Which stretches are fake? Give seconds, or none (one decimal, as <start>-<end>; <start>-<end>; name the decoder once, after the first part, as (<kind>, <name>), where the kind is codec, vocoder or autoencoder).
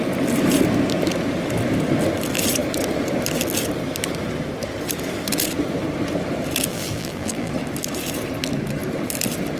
6.7-7.5 (vocoder, BigVGAN v2)